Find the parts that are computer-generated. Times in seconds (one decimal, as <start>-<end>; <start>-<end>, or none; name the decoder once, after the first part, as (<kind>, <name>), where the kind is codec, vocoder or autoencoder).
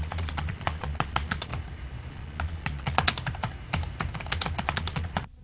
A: 0.0-1.5 (vocoder, Vocos); 2.1-3.0; 4.6-5.4